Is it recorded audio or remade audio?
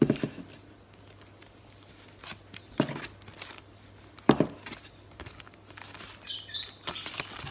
recorded